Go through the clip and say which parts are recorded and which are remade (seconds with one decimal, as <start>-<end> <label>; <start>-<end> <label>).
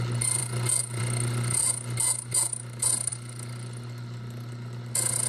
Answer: 0.0-5.3 recorded